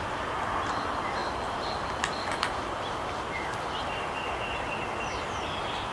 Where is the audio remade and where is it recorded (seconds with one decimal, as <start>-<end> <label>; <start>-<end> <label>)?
0.0-5.9 recorded